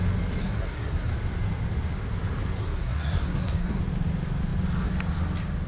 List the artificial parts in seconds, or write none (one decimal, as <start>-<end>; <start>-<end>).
0.4-1.1; 2.6-3.8